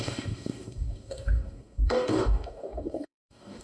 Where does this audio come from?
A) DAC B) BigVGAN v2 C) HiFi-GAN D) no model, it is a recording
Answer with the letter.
A